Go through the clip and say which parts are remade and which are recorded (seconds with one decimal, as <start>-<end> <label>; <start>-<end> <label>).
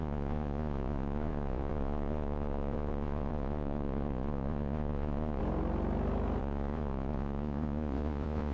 0.0-5.4 remade; 5.4-6.4 recorded; 6.4-8.5 remade